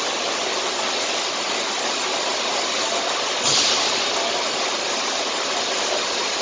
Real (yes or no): yes